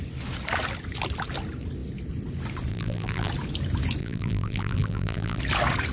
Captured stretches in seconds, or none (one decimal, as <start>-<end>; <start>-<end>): 0.0-2.7; 3.3-4.0; 5.4-5.9